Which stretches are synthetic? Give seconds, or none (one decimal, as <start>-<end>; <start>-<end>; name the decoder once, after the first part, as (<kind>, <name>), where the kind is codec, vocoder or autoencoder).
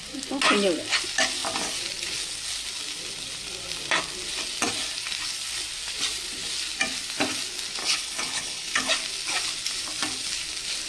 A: 7.8-8.9 (codec, HILCodec)